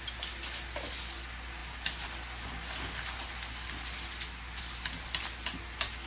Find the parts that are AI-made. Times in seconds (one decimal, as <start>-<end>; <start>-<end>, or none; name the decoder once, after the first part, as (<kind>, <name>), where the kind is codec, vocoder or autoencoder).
none

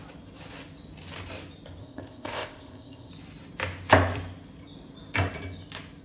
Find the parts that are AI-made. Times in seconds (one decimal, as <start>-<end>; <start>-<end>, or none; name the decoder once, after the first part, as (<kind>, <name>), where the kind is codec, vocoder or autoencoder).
1.8-3.1 (codec, ZipCodec)

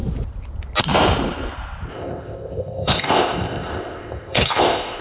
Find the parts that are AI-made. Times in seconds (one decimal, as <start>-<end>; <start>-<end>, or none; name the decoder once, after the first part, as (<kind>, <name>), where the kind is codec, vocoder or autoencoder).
1.9-5.0 (codec, ZipCodec)

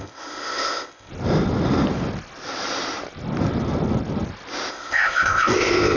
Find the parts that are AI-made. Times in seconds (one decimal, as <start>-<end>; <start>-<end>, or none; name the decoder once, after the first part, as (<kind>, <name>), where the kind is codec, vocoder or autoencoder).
0.0-1.1 (codec, ZipCodec); 4.7-6.0

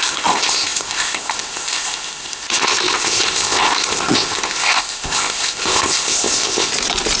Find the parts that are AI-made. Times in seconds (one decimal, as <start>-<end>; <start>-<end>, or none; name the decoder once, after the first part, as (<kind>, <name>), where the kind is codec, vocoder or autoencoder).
0.0-6.7 (codec, ZipCodec)

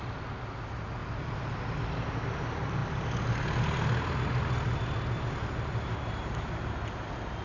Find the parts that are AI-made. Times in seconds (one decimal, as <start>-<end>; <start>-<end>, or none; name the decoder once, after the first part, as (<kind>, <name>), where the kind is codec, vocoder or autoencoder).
none

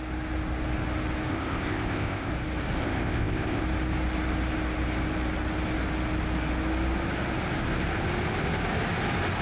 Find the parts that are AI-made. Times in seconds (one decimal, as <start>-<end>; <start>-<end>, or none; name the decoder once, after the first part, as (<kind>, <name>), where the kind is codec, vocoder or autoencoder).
1.3-2.3 (codec, ZipCodec); 2.8-3.6